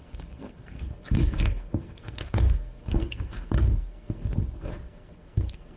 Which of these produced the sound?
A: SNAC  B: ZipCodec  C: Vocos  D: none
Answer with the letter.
A